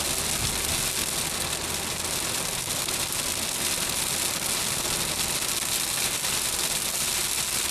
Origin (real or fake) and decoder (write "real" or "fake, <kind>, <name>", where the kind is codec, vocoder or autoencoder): real